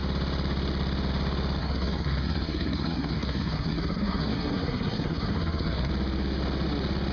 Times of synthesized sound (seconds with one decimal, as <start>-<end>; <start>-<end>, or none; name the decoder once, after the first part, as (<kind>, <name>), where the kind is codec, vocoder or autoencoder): 1.6-5.9 (codec, SNAC)